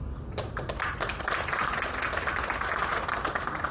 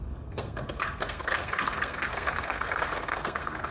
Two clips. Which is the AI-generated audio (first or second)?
second